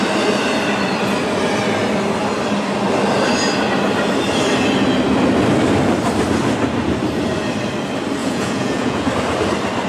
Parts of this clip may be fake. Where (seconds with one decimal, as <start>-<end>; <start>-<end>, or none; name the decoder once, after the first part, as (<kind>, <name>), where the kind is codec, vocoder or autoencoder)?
8.2-9.1 (vocoder, Vocos)